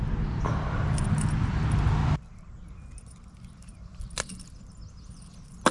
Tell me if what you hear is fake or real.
real